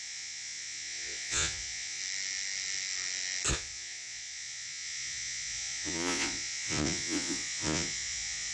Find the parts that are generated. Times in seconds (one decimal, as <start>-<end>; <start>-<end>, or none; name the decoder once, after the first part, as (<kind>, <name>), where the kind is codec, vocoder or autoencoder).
0.0-2.0 (vocoder, Vocos); 3.5-8.5